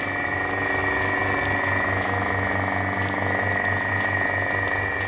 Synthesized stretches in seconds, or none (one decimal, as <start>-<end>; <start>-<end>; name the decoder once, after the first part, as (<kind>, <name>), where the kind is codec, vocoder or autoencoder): none